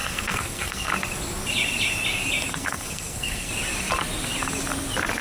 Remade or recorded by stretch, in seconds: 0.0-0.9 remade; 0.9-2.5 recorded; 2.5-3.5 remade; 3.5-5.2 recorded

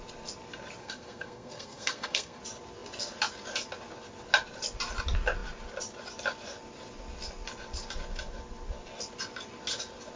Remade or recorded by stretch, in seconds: 0.0-0.8 recorded; 0.8-2.4 remade; 2.4-10.2 recorded

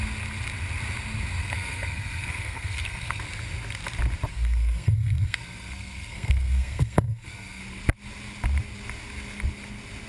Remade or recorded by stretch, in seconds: 0.0-1.4 recorded; 1.4-3.2 remade; 3.2-4.3 recorded; 4.3-7.6 remade; 7.6-10.1 recorded